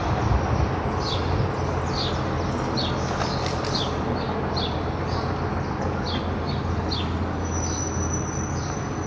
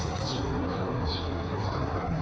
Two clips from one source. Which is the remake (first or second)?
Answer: second